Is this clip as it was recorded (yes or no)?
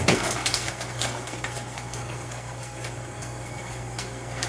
no